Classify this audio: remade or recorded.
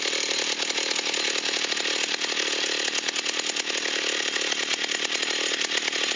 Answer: recorded